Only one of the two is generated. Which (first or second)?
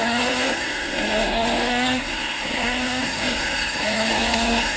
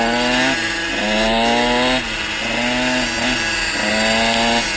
first